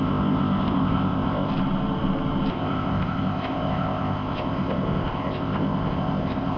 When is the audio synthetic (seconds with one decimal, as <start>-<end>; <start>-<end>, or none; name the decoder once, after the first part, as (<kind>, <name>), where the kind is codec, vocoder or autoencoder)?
0.0-1.5 (codec, ZipCodec); 2.5-6.6